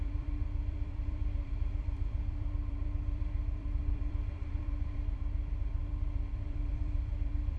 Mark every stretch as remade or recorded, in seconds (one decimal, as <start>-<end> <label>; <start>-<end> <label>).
0.0-7.6 remade